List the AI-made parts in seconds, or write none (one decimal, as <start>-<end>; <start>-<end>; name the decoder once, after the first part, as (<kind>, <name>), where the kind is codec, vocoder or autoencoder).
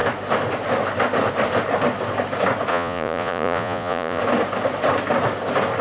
2.7-4.2 (vocoder, Vocos)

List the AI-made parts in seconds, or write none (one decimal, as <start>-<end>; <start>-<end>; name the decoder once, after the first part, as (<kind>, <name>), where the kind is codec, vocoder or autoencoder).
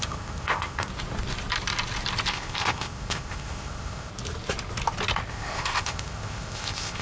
0.0-0.9 (codec, ZipCodec); 2.3-4.1; 5.3-7.0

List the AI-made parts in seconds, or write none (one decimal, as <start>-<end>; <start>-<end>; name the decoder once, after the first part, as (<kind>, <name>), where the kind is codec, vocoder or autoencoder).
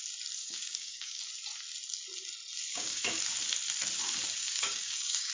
0.4-1.3 (codec, DAC); 2.7-3.2; 4.4-5.3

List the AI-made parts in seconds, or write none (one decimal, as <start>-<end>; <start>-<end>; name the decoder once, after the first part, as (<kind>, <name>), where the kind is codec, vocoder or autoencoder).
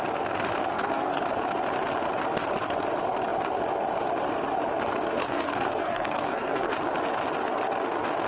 0.7-1.2 (codec, SNAC); 5.2-6.7